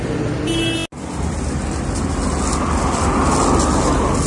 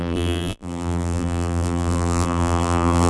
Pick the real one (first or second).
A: first